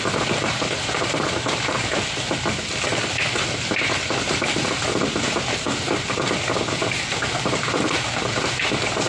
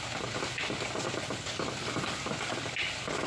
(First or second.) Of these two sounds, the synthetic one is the first